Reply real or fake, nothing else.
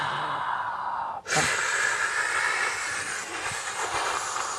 real